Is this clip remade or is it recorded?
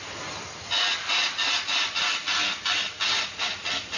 recorded